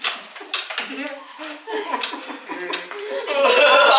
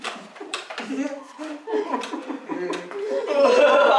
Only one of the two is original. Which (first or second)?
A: first